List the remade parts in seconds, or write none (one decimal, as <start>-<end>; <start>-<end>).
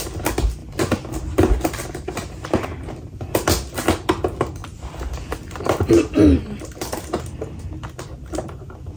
4.6-7.2